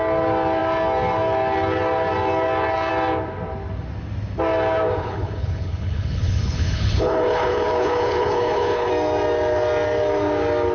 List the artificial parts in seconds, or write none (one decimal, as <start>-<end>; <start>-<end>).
5.0-8.9